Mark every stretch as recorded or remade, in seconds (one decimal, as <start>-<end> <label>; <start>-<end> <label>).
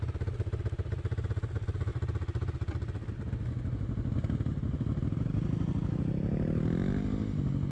0.0-7.7 recorded